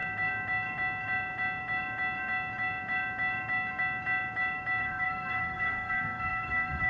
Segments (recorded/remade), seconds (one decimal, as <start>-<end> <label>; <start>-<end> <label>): 0.0-4.8 recorded; 4.8-6.9 remade

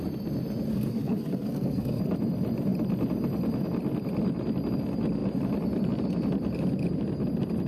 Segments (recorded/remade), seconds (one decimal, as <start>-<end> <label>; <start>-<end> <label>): 0.0-0.7 recorded; 0.7-2.0 remade; 2.0-7.7 recorded